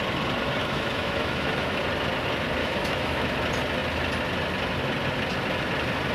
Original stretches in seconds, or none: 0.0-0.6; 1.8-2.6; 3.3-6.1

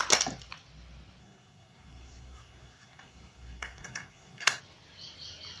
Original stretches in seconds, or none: 0.0-1.2; 4.6-5.6

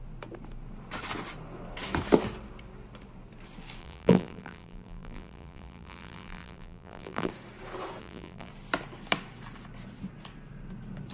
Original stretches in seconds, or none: 0.0-3.8; 7.3-8.0; 8.5-11.1

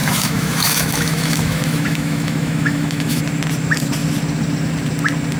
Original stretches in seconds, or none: 3.2-5.4